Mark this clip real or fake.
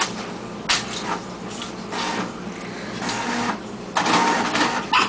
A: real